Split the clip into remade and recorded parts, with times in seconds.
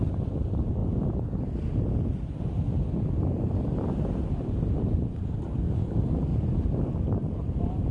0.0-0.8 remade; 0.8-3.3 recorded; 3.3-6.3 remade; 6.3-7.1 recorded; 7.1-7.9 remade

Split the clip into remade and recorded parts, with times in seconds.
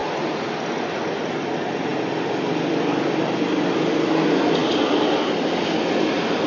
0.0-1.3 remade; 1.3-6.5 recorded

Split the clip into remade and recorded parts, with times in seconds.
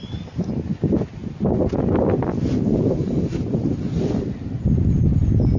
0.0-5.6 recorded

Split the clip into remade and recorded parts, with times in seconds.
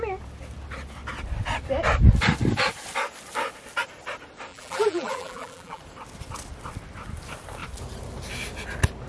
0.0-4.5 recorded; 4.5-5.8 remade; 5.8-9.1 recorded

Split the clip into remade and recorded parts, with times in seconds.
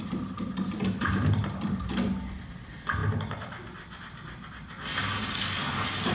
0.0-6.1 recorded